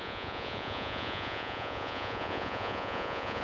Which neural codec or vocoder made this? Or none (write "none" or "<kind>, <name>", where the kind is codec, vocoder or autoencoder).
vocoder, Vocos